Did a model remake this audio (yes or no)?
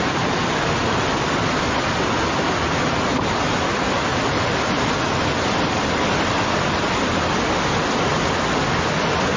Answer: no